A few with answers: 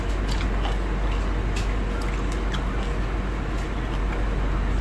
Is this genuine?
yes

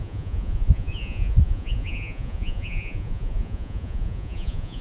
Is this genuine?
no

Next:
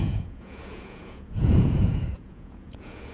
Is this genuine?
no